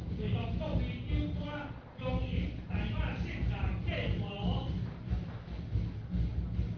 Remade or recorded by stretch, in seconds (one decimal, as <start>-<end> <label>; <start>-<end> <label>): 0.0-0.5 remade; 0.5-6.8 recorded